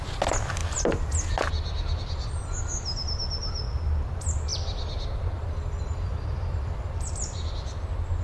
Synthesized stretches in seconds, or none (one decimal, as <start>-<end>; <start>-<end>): 4.5-7.5